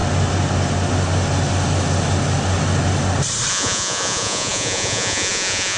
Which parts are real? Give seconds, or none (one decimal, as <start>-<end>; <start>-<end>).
0.0-3.5